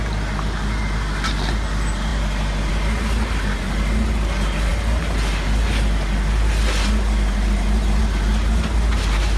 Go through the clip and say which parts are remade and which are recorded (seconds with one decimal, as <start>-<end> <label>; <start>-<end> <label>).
0.0-9.4 recorded

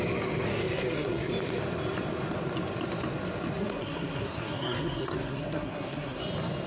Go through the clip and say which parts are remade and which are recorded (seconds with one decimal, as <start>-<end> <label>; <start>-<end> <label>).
0.0-0.5 recorded; 0.5-1.3 remade; 1.3-3.6 recorded; 3.6-6.2 remade; 6.2-6.7 recorded

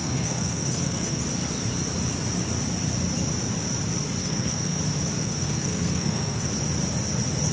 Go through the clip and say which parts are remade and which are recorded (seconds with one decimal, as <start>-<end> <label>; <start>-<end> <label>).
0.0-1.2 remade; 1.2-4.2 recorded; 4.2-4.8 remade; 4.8-5.2 recorded; 5.2-6.5 remade; 6.5-7.5 recorded

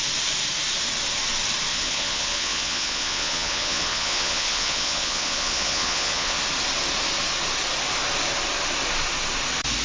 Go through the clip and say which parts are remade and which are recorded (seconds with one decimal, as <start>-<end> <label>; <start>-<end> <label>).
0.0-1.7 recorded; 1.7-6.4 remade; 6.4-9.8 recorded

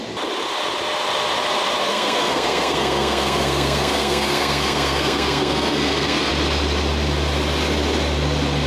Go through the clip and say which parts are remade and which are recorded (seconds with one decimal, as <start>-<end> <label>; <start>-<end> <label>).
0.0-1.8 recorded; 1.8-6.3 remade; 6.3-8.7 recorded

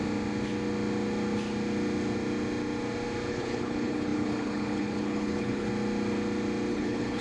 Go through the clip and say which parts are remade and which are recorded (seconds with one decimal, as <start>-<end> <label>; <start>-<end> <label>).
0.0-3.3 recorded; 3.3-5.7 remade; 5.7-6.7 recorded; 6.7-7.2 remade